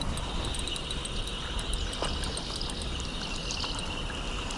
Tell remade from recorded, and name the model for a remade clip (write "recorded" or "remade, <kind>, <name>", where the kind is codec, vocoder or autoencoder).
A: recorded